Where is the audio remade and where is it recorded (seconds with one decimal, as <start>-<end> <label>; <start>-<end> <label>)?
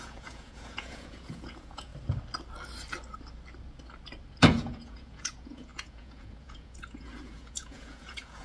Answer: 0.0-1.9 remade; 1.9-4.4 recorded; 4.4-8.4 remade